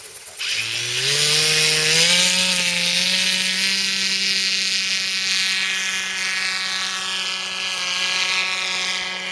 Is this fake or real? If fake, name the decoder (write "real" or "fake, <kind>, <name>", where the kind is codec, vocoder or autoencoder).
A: real